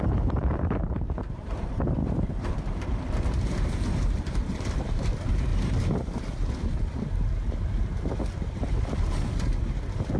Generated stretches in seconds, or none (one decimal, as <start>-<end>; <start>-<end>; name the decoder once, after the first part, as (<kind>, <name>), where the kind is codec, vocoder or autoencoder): 0.0-5.5 (vocoder, BigVGAN v2)